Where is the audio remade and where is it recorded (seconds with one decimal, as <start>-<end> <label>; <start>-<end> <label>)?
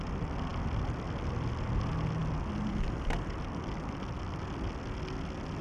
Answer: 0.0-5.6 recorded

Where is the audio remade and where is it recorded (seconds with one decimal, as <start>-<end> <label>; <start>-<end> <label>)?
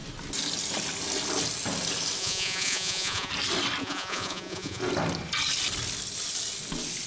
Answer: 0.0-2.2 recorded; 2.2-3.3 remade; 3.3-3.8 recorded; 3.8-4.8 remade; 4.8-7.1 recorded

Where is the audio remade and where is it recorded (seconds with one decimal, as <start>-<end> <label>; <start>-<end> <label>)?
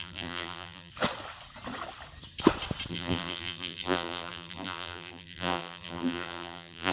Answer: 0.0-0.9 remade; 0.9-2.9 recorded; 2.9-6.9 remade